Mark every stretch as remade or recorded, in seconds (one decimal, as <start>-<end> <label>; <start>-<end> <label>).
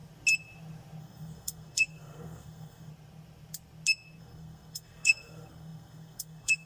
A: 0.0-1.0 recorded; 1.0-2.9 remade; 2.9-4.2 recorded; 4.2-6.7 remade